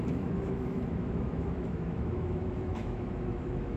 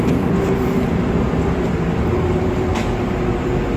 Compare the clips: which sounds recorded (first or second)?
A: second